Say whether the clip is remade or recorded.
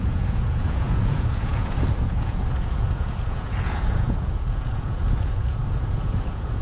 remade